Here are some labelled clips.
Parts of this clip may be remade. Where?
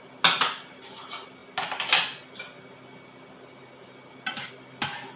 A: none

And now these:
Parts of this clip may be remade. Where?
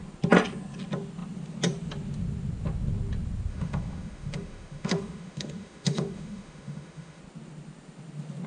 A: 3.5-7.2 (autoencoder, DAC-VAE)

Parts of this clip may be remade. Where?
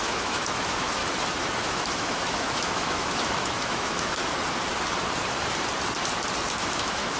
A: 0.0-1.0 (autoencoder, DAC-VAE); 1.6-4.2; 6.5-7.2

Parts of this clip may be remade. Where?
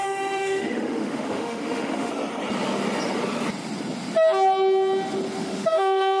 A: 0.0-2.1 (autoencoder, DAC-VAE); 5.4-6.2